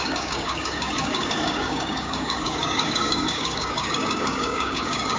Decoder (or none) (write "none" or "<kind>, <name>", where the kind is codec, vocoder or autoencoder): codec, DAC